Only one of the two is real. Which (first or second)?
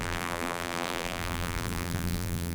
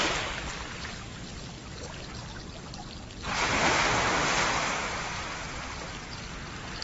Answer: second